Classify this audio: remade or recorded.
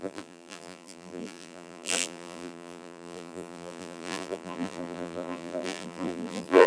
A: remade